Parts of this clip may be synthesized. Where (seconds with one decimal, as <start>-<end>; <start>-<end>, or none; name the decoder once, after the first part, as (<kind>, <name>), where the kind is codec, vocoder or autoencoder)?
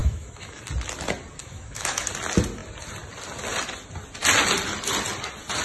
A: 0.0-0.6 (autoencoder, DAC-VAE); 1.4-2.1